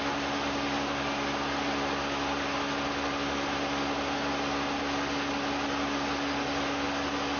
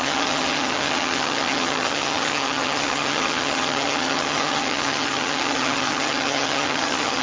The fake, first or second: second